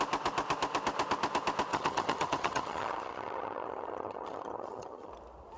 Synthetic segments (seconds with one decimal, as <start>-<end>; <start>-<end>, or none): 1.7-5.1